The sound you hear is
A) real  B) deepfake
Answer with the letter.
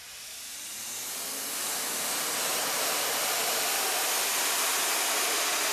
A